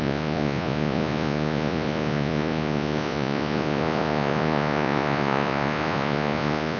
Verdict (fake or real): fake